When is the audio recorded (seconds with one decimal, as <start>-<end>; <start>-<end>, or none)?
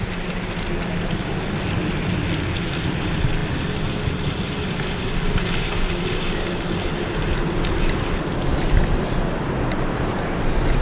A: 0.0-10.8